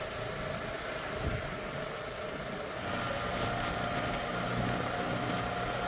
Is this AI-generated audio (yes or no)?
no